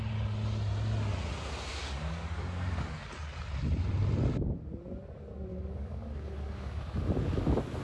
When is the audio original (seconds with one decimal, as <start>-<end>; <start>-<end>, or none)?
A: 0.0-1.7; 3.0-5.5; 6.8-7.8